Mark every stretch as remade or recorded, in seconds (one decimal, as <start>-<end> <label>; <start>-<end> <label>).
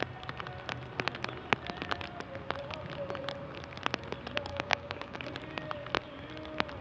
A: 0.0-4.5 recorded; 4.5-5.2 remade; 5.2-6.8 recorded